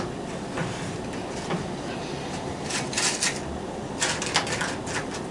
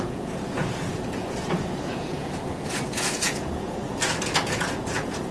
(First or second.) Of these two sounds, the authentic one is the first